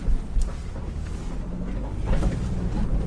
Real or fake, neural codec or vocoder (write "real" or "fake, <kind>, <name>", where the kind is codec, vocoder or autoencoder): real